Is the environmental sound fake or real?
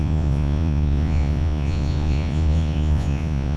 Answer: fake